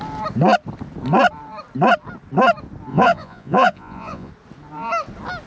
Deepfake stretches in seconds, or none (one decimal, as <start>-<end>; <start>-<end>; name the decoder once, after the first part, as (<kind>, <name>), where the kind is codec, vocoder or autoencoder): 2.9-4.3 (vocoder, Vocos)